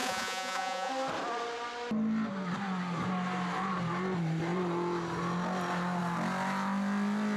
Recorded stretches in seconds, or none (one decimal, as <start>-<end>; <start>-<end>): 0.9-7.4